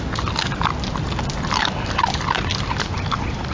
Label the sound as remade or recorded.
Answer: recorded